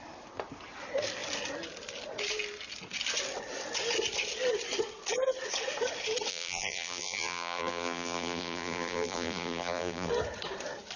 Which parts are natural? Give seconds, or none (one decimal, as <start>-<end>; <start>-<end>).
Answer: 0.0-6.3; 10.1-11.0

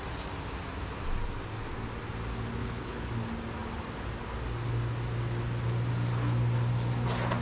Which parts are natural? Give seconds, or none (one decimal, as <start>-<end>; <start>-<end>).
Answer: 0.0-2.6; 3.1-7.4